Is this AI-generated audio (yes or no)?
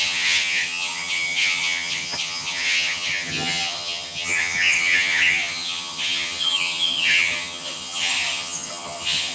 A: yes